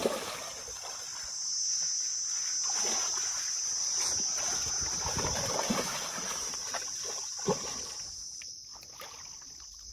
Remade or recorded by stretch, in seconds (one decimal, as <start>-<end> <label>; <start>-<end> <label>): 0.0-9.9 recorded